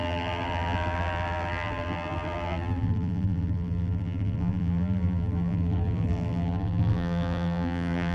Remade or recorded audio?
remade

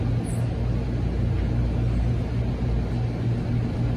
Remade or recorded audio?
recorded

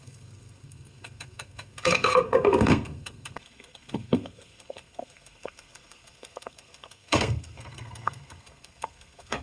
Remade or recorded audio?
remade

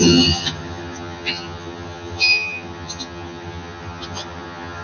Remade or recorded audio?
remade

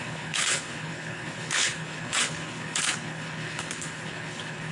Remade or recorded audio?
remade